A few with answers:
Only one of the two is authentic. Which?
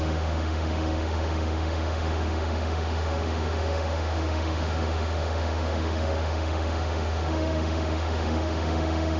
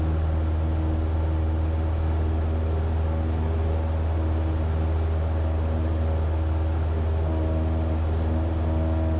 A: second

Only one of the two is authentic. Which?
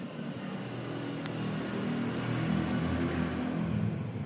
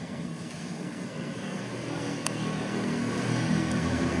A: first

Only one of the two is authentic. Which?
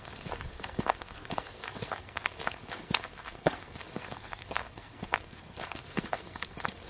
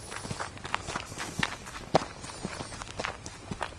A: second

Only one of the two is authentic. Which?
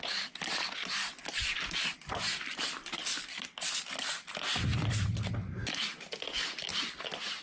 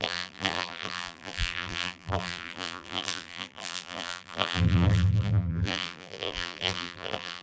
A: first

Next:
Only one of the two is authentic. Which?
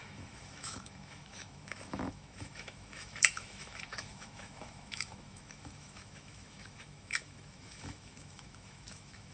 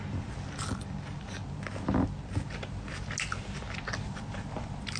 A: second